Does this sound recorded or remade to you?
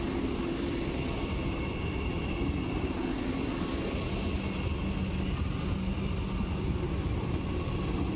recorded